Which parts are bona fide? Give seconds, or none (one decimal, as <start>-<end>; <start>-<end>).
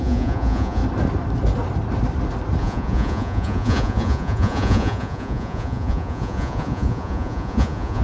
0.8-2.6